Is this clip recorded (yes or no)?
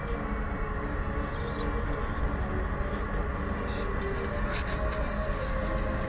yes